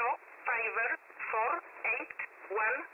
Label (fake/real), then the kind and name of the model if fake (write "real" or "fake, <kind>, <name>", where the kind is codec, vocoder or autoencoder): real